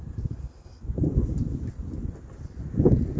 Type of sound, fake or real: real